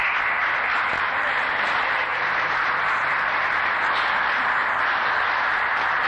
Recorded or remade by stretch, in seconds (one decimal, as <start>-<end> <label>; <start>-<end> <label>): 0.0-6.1 recorded